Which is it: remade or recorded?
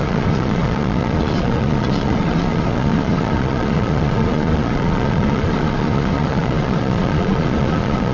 remade